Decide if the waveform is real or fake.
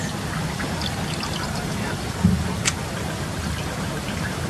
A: real